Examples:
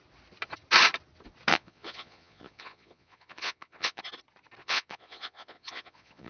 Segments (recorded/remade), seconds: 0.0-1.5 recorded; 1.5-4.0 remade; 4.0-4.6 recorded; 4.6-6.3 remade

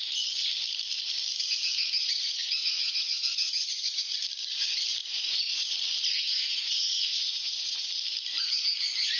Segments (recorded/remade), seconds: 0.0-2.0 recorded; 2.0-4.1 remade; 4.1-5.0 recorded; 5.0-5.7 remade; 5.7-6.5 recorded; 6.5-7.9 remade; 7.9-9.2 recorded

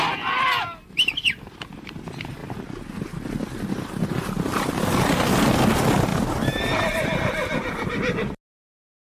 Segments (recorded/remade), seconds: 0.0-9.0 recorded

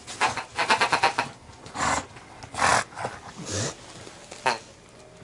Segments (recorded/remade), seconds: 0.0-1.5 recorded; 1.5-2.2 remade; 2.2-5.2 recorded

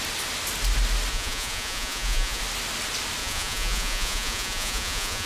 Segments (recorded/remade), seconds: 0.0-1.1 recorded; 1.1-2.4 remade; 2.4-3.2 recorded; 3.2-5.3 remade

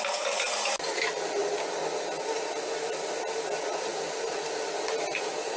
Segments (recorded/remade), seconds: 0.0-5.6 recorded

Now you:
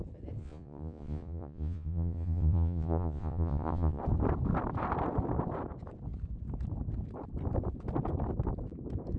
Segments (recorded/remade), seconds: 0.0-0.4 recorded; 0.4-4.0 remade; 4.0-9.2 recorded

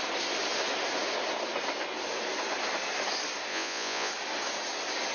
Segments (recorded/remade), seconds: 0.0-3.5 recorded; 3.5-4.1 remade; 4.1-5.1 recorded